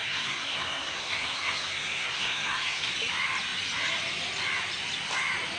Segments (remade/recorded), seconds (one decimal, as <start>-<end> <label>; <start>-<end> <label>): 0.0-2.9 remade; 2.9-5.6 recorded